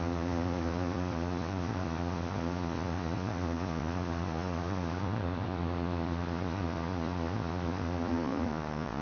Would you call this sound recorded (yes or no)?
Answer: no